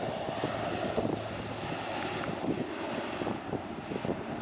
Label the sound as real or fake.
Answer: real